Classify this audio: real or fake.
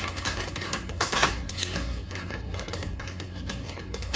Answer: fake